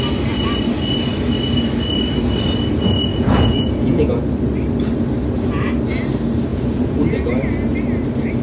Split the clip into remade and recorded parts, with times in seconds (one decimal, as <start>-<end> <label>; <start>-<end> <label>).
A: 0.0-3.1 recorded; 3.1-4.2 remade; 4.2-6.5 recorded; 6.5-7.3 remade; 7.3-8.4 recorded